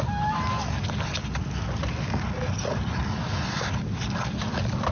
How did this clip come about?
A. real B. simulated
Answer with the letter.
A